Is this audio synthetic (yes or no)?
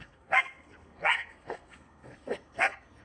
yes